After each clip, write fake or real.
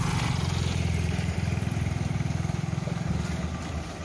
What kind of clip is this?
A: real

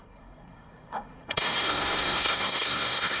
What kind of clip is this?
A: fake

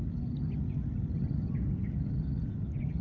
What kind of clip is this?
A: real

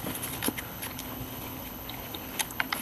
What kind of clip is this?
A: fake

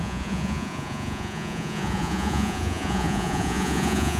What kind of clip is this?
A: fake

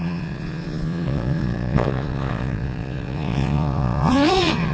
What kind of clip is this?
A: fake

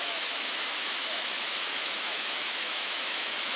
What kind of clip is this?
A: fake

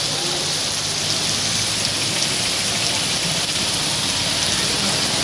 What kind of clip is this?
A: real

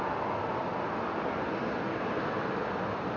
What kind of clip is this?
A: real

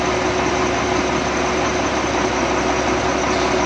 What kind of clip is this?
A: real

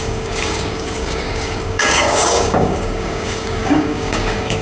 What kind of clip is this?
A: fake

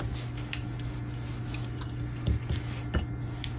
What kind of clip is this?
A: real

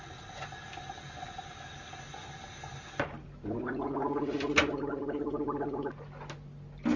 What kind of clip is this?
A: real